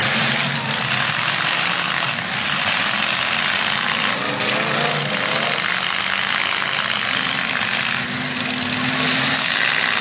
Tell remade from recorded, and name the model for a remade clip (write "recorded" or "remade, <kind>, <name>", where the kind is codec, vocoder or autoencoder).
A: recorded